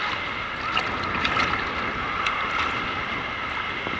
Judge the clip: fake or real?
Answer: real